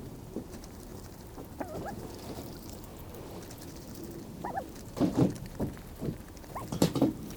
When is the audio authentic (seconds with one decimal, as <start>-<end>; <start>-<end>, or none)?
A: 2.9-3.8